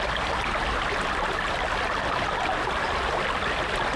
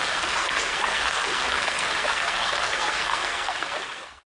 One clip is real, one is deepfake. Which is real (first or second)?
first